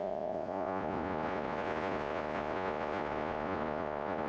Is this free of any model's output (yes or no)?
no